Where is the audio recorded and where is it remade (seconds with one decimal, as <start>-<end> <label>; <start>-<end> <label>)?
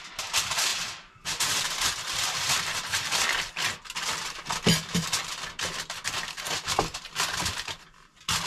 0.0-8.5 recorded